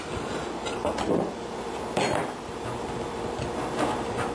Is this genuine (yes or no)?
yes